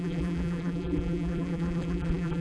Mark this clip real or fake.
fake